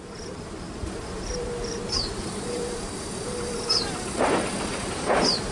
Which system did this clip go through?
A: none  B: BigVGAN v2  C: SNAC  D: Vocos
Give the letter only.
B